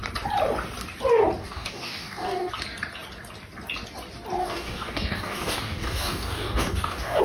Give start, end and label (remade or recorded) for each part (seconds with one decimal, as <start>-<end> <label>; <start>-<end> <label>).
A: 0.0-1.4 recorded; 1.4-2.5 remade; 2.5-4.4 recorded; 4.4-7.2 remade